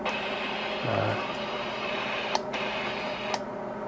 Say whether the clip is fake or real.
real